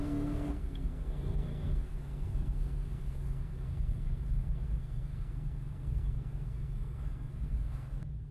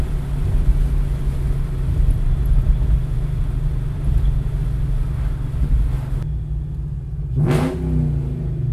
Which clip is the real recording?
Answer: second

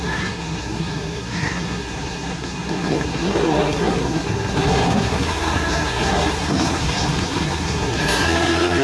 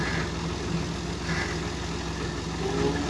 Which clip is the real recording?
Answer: second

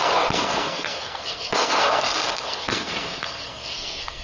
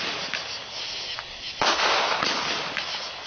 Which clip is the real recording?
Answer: second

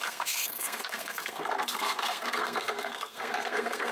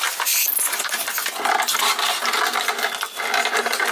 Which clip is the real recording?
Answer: second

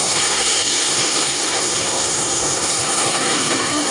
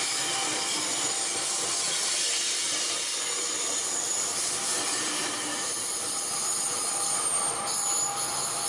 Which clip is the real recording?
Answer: second